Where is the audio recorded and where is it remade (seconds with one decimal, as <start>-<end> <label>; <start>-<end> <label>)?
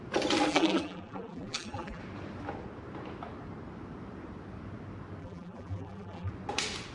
0.0-0.5 recorded; 0.5-2.0 remade; 2.0-5.2 recorded; 5.2-6.3 remade; 6.3-6.9 recorded